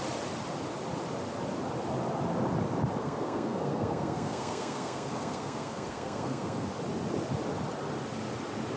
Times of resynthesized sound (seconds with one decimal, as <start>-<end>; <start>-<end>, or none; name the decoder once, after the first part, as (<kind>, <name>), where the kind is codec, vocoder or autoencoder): 3.0-6.7 (codec, SNAC)